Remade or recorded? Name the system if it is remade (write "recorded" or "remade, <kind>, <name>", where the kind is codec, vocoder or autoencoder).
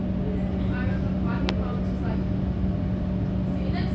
recorded